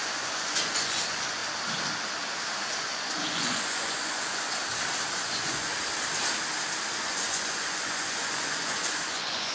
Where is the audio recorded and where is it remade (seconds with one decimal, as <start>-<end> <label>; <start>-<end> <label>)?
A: 0.0-1.4 remade; 1.4-2.8 recorded; 2.8-4.5 remade; 4.5-5.1 recorded; 5.1-5.7 remade; 5.7-6.9 recorded; 6.9-9.5 remade